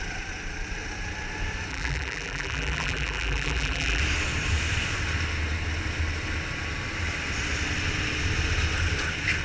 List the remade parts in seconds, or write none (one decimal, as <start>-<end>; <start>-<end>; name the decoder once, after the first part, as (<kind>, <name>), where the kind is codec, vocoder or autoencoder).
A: 1.7-4.0 (vocoder, BigVGAN v2)